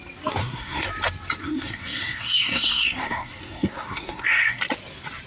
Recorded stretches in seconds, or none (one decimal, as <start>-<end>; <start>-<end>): 0.0-0.4; 0.9-1.4; 4.6-5.3